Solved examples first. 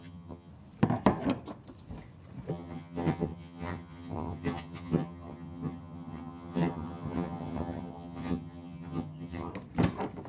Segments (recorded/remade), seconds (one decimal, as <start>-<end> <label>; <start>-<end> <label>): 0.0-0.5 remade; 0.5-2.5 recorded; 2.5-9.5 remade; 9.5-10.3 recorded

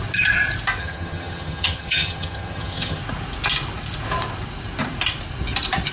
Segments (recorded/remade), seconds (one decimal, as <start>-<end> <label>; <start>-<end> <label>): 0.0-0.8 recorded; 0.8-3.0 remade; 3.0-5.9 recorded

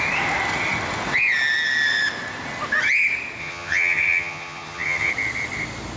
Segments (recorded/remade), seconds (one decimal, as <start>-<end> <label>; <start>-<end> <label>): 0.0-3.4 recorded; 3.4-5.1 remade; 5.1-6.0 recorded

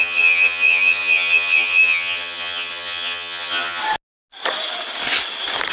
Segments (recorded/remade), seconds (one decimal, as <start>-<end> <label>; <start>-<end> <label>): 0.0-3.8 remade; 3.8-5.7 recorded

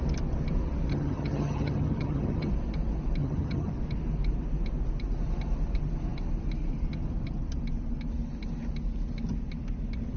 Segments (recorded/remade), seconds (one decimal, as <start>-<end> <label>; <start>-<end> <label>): 0.0-0.9 recorded; 0.9-2.5 remade; 2.5-3.2 recorded; 3.2-3.7 remade; 3.7-10.2 recorded

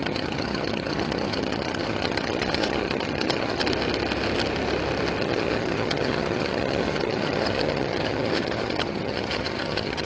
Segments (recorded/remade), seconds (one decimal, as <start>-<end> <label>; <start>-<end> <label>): 0.0-3.6 remade; 3.6-5.2 recorded; 5.2-10.1 remade